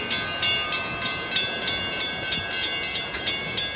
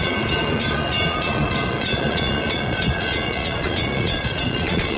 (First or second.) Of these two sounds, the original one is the first